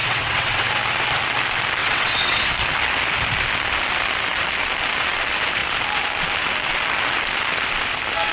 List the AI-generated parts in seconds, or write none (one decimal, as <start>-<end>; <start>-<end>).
0.0-0.7; 1.8-2.5